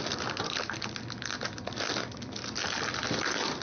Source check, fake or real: real